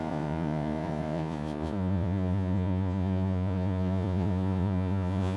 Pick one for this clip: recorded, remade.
remade